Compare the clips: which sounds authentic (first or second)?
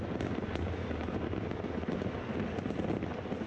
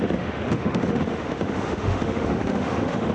first